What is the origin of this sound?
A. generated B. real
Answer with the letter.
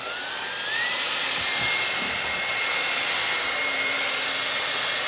A